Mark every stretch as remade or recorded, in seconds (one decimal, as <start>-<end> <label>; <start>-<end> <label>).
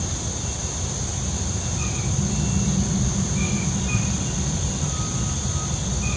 0.0-6.2 recorded